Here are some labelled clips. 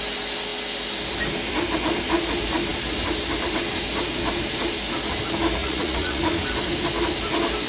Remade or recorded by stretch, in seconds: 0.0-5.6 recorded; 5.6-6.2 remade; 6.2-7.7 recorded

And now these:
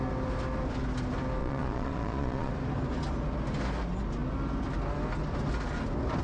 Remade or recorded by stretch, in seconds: 0.0-1.4 recorded; 1.4-2.5 remade; 2.5-6.2 recorded

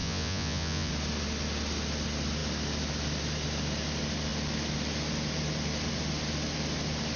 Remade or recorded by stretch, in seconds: 0.0-0.9 remade; 0.9-7.2 recorded

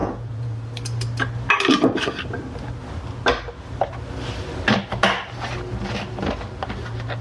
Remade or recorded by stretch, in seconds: 0.0-0.6 remade; 0.6-7.2 recorded

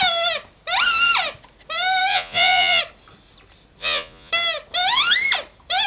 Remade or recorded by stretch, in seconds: 0.0-2.1 recorded; 2.1-2.8 remade; 2.8-3.8 recorded; 3.8-4.3 remade; 4.3-5.9 recorded

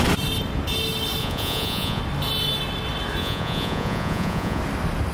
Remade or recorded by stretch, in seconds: 0.0-1.2 recorded; 1.2-2.0 remade; 2.0-3.2 recorded; 3.2-4.6 remade; 4.6-5.1 recorded